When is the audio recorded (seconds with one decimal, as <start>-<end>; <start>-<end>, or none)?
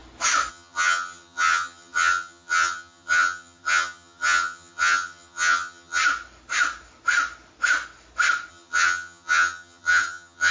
0.0-0.5; 6.0-8.5